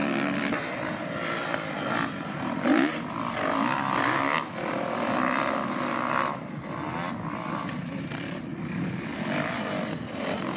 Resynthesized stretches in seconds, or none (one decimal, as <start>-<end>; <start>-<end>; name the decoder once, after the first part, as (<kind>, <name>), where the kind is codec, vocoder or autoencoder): none